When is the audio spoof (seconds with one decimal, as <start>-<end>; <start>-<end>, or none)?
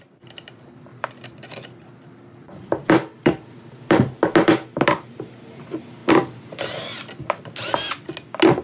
0.9-4.0; 6.0-7.2